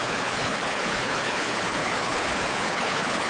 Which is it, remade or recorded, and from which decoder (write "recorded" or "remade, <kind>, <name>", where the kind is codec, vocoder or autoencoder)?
remade, codec, HILCodec